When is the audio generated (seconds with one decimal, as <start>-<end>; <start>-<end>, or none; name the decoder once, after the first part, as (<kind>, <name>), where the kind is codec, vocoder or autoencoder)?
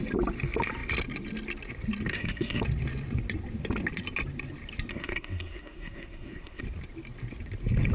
2.1-2.6 (codec, SNAC); 4.9-6.6